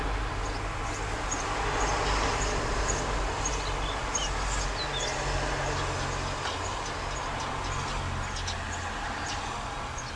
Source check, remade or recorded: recorded